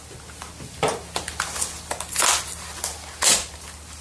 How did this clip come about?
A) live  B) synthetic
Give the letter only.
A